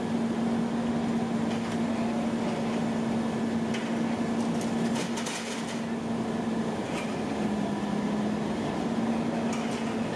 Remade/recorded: recorded